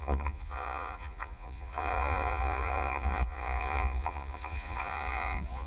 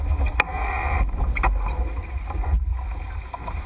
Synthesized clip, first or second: first